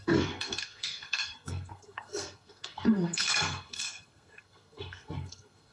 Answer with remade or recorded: remade